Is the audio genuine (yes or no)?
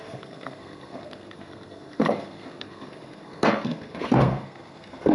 no